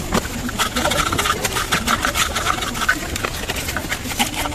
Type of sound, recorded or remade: recorded